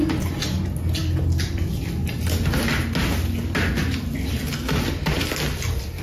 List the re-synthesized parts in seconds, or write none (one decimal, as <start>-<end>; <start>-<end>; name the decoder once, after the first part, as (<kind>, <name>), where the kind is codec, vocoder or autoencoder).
none